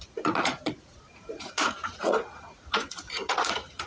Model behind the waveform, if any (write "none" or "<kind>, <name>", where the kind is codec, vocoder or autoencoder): vocoder, Vocos